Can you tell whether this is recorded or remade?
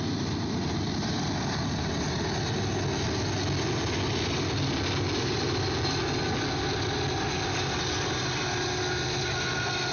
recorded